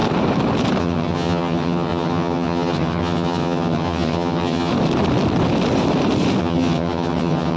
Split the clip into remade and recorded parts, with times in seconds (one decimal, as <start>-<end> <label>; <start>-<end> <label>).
0.0-0.8 recorded; 0.8-4.7 remade; 4.7-6.4 recorded; 6.4-7.6 remade